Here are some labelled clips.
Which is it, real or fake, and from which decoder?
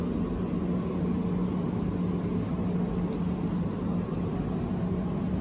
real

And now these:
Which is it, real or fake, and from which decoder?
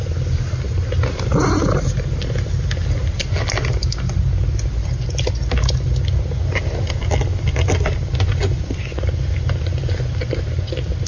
real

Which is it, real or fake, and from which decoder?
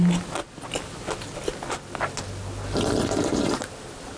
real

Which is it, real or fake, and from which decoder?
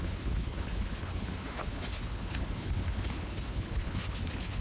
fake, codec, HILCodec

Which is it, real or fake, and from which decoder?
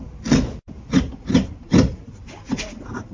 real